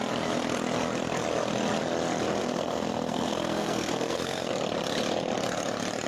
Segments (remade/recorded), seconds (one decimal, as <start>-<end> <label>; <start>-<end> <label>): 0.0-2.4 recorded; 2.4-4.5 remade; 4.5-6.1 recorded